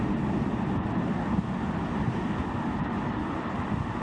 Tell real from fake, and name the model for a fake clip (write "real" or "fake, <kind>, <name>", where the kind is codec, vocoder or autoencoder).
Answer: real